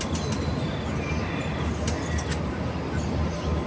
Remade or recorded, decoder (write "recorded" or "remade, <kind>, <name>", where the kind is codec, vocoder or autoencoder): recorded